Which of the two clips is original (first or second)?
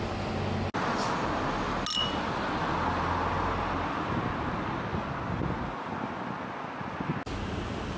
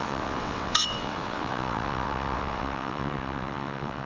first